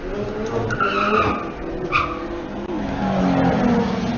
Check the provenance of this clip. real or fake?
real